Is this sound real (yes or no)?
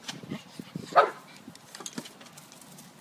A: yes